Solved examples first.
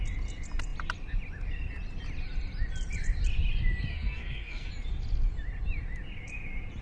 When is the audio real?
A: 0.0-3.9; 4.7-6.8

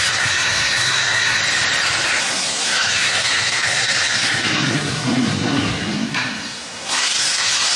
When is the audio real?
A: 1.4-2.2

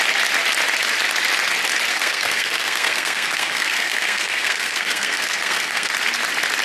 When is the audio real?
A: 0.0-1.9; 5.9-6.6

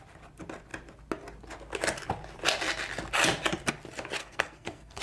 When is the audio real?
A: 0.0-4.2

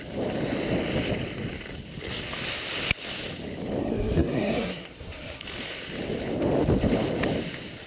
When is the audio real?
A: 0.0-3.8; 5.4-7.9

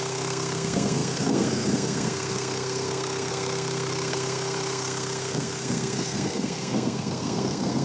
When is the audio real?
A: none